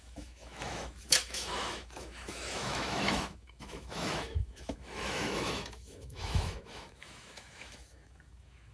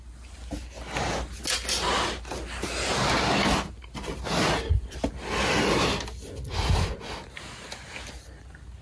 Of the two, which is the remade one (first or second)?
first